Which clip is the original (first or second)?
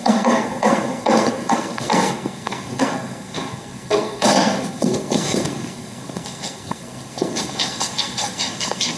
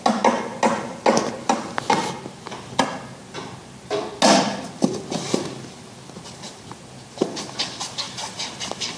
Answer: second